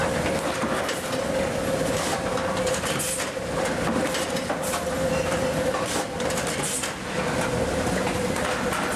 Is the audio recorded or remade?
recorded